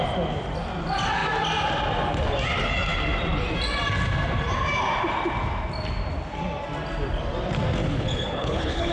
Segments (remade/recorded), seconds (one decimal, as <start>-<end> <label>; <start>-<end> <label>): 0.0-7.8 recorded; 7.8-8.9 remade